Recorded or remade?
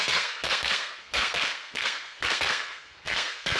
remade